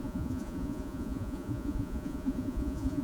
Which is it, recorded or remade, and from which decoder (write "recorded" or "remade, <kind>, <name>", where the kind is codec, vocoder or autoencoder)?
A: remade, vocoder, Vocos